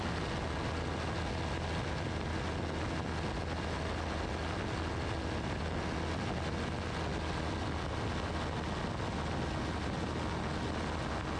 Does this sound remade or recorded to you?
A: recorded